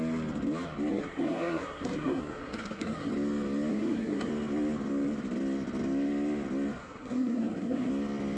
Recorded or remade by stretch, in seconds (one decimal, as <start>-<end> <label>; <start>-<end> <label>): 0.0-0.9 recorded; 0.9-3.1 remade; 3.1-3.7 recorded; 3.7-4.3 remade; 4.3-6.8 recorded; 6.8-7.9 remade; 7.9-8.4 recorded